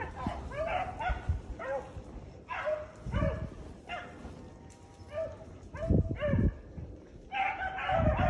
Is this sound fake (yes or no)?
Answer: no